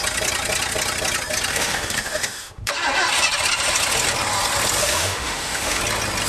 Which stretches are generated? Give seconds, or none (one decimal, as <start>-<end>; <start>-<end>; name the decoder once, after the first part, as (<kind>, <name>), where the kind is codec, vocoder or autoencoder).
1.5-2.7 (autoencoder, DAC-VAE); 4.8-5.8